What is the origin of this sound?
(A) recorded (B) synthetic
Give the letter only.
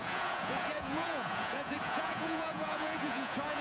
B